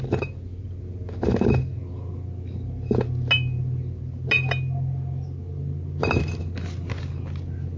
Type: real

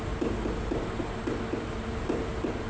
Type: real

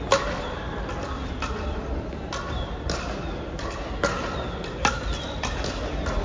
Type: real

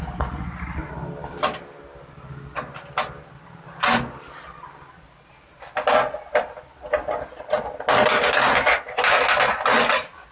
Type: real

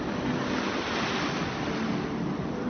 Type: real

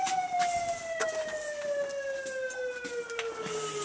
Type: real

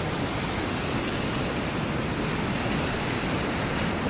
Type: real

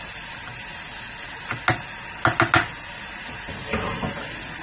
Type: real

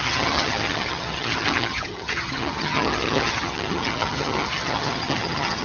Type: fake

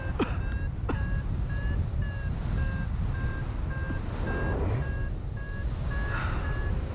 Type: real